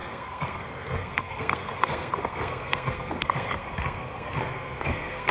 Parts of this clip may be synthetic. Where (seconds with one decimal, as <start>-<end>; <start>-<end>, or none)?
0.0-5.3